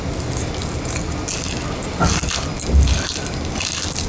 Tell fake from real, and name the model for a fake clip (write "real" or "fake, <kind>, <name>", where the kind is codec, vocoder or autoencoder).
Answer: real